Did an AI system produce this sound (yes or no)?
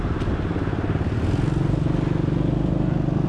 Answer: no